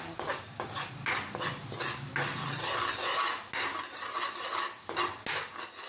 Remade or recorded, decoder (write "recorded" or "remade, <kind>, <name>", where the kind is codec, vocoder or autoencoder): recorded